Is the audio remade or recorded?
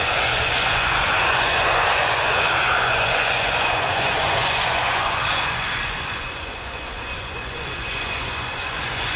remade